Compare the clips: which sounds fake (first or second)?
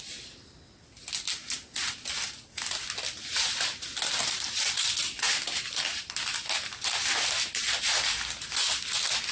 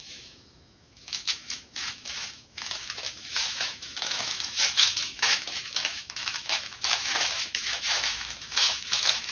second